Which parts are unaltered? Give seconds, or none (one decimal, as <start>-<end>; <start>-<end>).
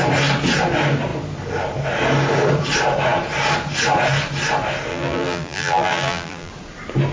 0.0-4.9; 6.5-7.1